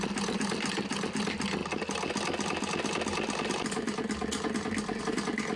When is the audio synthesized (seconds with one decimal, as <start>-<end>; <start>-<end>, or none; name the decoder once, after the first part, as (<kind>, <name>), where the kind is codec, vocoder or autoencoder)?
none